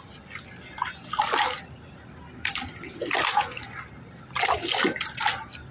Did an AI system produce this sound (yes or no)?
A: no